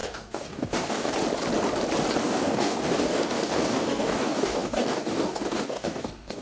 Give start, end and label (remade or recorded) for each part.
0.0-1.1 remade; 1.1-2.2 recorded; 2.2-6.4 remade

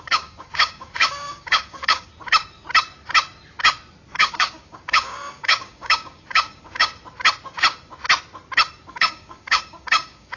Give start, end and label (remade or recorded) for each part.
0.0-2.1 remade; 2.1-4.1 recorded; 4.1-6.9 remade; 6.9-8.9 recorded; 8.9-10.4 remade

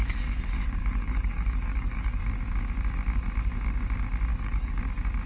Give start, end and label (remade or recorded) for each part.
0.0-0.8 recorded; 0.8-2.2 remade; 2.2-4.3 recorded; 4.3-4.8 remade; 4.8-5.3 recorded